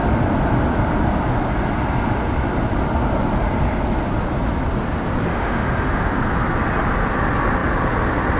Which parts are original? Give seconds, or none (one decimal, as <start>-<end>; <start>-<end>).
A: 0.0-5.3; 6.1-8.4